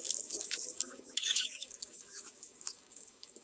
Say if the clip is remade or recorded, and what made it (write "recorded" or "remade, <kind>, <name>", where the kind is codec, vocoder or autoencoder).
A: remade, codec, DAC